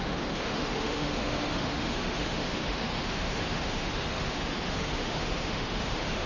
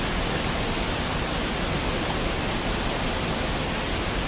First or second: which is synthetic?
first